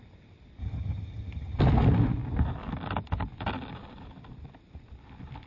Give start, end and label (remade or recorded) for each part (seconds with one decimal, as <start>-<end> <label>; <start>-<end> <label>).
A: 0.0-0.6 recorded; 0.6-1.6 remade; 1.6-5.5 recorded